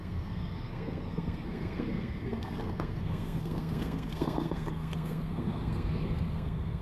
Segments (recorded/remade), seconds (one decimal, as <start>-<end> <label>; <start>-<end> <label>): 0.0-6.8 remade